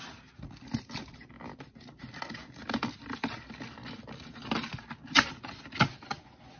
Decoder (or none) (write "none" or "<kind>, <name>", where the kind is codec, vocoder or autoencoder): none